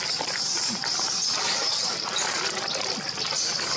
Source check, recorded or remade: recorded